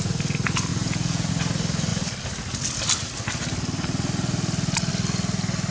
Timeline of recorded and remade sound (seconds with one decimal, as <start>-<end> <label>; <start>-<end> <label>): 0.0-0.7 recorded; 0.7-1.3 remade; 1.3-5.7 recorded